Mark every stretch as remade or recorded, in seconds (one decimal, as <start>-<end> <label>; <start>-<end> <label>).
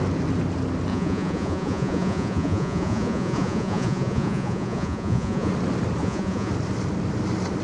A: 0.0-0.9 recorded; 0.9-5.5 remade; 5.5-6.0 recorded; 6.0-6.5 remade; 6.5-7.6 recorded